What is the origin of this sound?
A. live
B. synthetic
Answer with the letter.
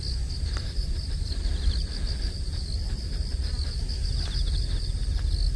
A